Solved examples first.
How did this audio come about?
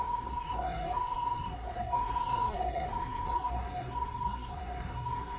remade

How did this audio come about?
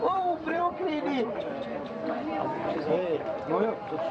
remade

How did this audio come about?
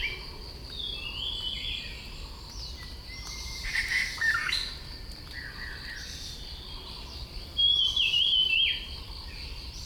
recorded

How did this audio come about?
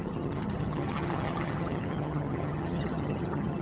remade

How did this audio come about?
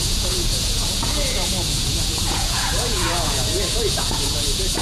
remade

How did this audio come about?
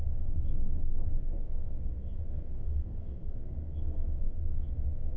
remade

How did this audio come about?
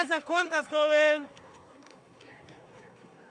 remade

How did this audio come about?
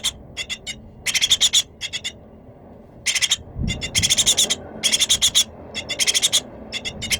recorded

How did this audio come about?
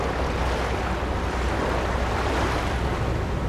recorded